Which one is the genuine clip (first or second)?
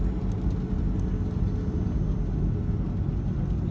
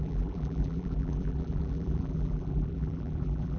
first